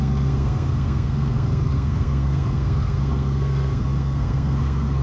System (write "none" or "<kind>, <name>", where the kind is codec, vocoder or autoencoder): codec, SNAC